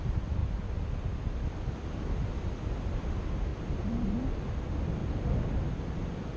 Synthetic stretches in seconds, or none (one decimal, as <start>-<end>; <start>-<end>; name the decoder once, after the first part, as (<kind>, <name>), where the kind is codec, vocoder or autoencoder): none